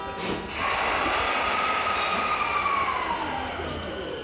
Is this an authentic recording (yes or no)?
yes